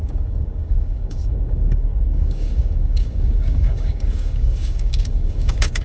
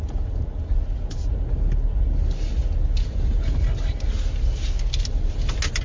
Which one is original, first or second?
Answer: second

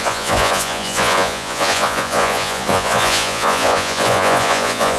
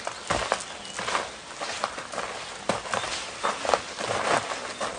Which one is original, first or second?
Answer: second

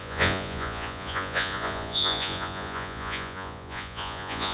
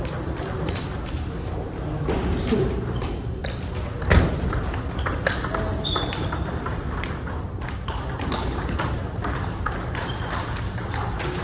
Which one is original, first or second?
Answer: second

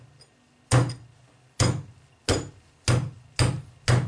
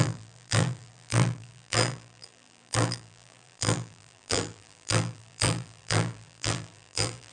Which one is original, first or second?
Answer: first